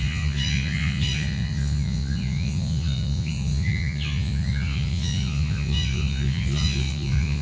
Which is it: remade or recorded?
remade